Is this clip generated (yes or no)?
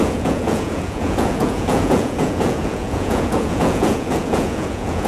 yes